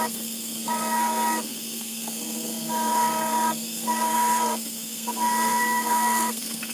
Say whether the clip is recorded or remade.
remade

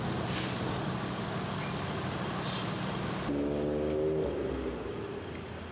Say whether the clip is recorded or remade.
recorded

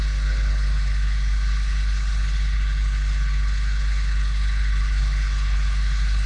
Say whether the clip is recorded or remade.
remade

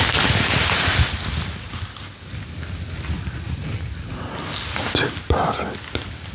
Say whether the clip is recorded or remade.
recorded